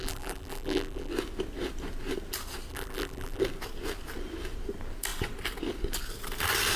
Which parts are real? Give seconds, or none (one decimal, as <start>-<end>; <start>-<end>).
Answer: 1.1-2.7; 3.4-6.8